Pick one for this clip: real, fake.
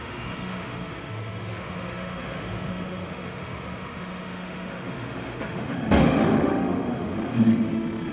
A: fake